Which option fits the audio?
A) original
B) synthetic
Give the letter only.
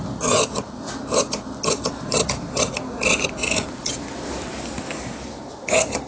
A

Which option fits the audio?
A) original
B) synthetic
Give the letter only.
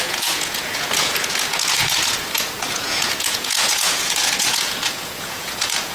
B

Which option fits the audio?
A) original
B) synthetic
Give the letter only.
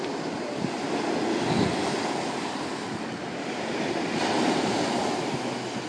A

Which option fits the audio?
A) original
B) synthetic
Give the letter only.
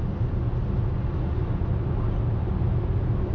A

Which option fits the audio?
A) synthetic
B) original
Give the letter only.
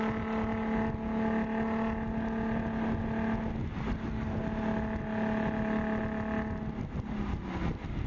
B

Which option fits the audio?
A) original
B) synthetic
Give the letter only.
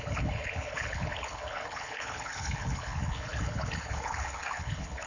B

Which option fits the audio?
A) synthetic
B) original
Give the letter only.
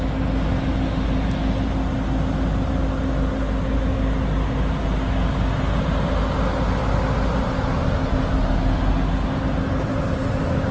B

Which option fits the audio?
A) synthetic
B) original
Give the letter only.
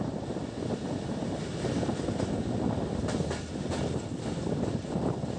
B